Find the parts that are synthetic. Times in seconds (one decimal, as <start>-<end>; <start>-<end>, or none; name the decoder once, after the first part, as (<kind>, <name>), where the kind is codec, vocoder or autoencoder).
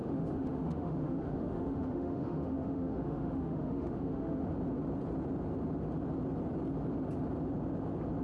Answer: 0.0-4.5 (autoencoder, DAC-VAE)